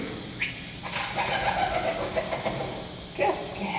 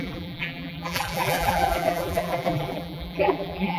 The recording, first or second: first